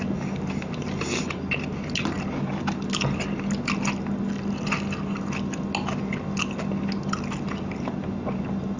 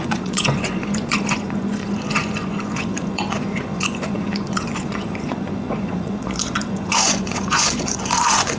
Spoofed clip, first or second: second